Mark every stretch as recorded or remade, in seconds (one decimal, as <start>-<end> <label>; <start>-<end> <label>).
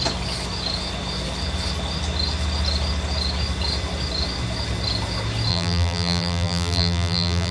0.0-5.5 recorded; 5.5-7.5 remade